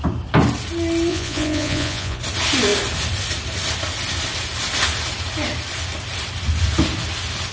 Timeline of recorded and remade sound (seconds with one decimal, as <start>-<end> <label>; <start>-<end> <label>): 0.0-1.1 recorded; 1.1-2.2 remade; 2.2-7.5 recorded